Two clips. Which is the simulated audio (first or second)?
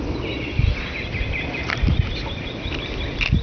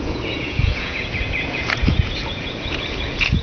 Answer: second